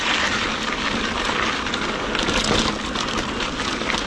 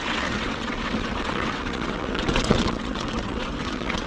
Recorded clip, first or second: first